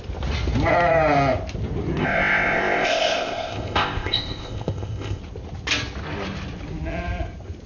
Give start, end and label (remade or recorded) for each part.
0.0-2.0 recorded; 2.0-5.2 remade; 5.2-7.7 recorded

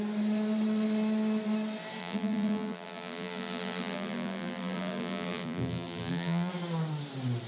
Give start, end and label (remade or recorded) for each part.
0.0-2.0 recorded; 2.0-6.5 remade; 6.5-7.5 recorded

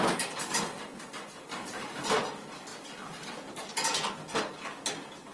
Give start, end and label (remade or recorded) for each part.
0.0-1.5 recorded; 1.5-2.1 remade; 2.1-2.7 recorded; 2.7-3.3 remade; 3.3-5.3 recorded

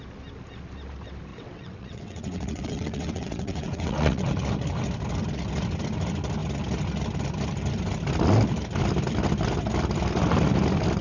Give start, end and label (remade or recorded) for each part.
0.0-1.3 recorded; 1.3-4.3 remade; 4.3-11.0 recorded

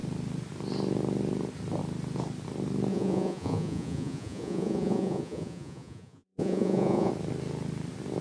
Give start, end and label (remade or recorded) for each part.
0.0-2.9 recorded; 2.9-7.1 remade; 7.1-8.2 recorded

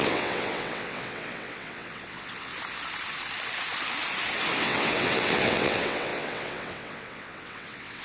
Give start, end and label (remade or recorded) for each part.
0.0-2.5 remade; 2.5-4.6 recorded; 4.6-8.0 remade

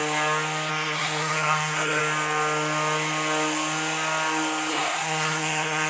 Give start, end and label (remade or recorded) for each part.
0.0-0.7 recorded; 0.7-2.0 remade; 2.0-4.7 recorded; 4.7-5.9 remade

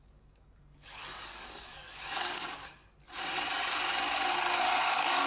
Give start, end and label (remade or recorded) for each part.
0.0-2.8 remade; 2.8-4.8 recorded; 4.8-5.3 remade